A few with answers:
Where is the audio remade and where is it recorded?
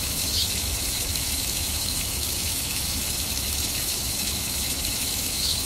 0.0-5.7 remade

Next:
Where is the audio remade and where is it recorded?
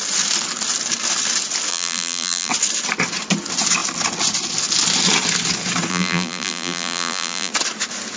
0.0-1.7 recorded; 1.7-2.5 remade; 2.5-5.9 recorded; 5.9-7.5 remade; 7.5-8.2 recorded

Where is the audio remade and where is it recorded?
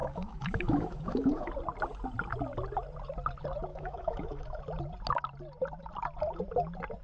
0.0-1.5 remade; 1.5-3.7 recorded; 3.7-4.6 remade; 4.6-7.0 recorded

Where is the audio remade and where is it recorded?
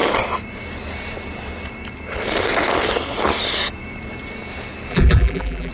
0.0-4.9 recorded; 4.9-5.7 remade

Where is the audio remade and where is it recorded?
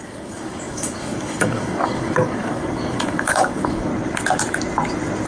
0.0-3.9 remade; 3.9-5.3 recorded